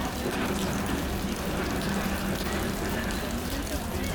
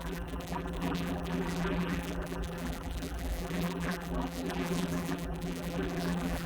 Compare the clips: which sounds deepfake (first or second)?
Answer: second